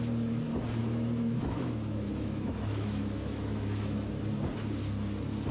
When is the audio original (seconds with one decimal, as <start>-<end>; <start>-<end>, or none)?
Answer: 0.0-0.8; 4.1-5.5